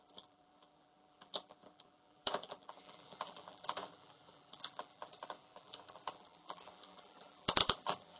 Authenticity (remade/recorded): remade